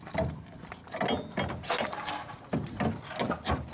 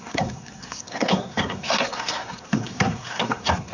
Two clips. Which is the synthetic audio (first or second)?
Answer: second